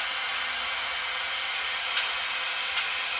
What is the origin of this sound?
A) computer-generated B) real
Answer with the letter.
B